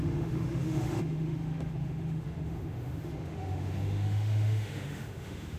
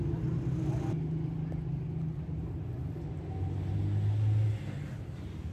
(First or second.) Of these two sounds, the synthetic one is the first